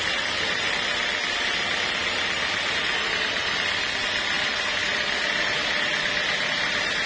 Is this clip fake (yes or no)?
no